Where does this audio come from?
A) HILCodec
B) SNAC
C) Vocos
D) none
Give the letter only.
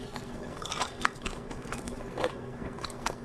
B